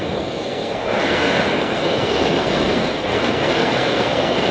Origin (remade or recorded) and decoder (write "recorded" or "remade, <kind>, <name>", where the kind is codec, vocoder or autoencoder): remade, codec, SNAC